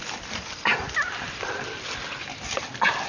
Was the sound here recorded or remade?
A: recorded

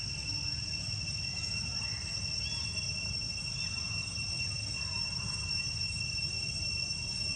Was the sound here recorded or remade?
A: recorded